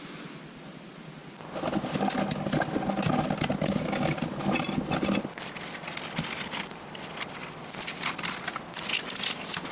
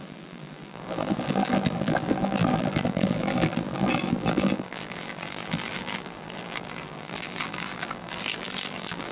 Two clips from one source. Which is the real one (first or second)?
first